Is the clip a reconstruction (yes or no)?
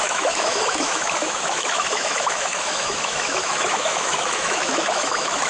yes